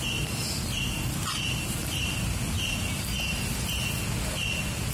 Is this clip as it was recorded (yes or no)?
yes